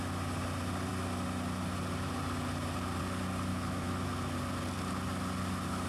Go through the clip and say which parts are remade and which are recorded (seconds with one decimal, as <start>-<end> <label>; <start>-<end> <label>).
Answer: 0.0-3.5 recorded; 3.5-4.2 remade; 4.2-5.9 recorded